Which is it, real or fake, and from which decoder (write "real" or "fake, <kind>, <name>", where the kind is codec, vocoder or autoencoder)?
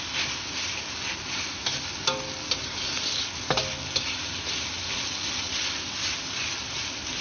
real